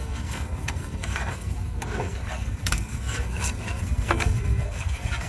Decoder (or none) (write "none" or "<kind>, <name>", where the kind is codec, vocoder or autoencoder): codec, SNAC